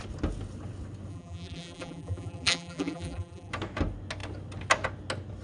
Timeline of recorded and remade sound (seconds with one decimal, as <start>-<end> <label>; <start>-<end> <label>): 0.0-1.1 recorded; 1.1-3.5 remade; 3.5-5.4 recorded